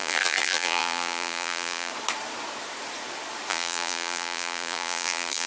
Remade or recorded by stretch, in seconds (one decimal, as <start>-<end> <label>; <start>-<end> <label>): 0.0-1.9 remade; 1.9-3.5 recorded; 3.5-5.5 remade